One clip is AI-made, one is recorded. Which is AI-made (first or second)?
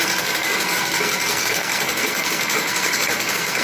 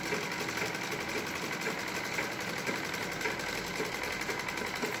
first